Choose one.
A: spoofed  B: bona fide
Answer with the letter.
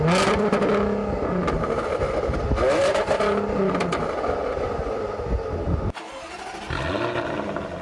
B